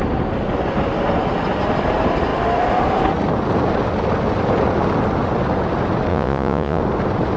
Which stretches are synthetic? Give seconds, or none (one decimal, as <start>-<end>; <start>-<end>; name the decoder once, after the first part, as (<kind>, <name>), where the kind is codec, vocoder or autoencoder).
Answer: 6.1-6.8 (vocoder, Vocos)